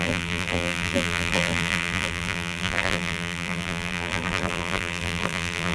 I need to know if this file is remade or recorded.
remade